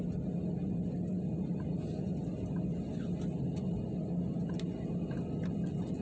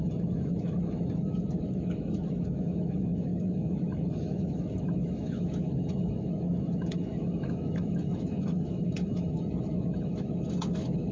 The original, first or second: first